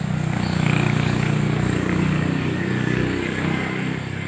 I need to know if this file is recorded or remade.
remade